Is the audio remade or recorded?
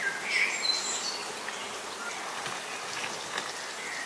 recorded